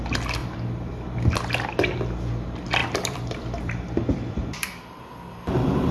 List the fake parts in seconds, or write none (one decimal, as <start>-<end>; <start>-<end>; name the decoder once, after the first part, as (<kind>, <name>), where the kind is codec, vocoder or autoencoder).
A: 0.4-1.3 (vocoder, BigVGAN v2); 2.8-5.0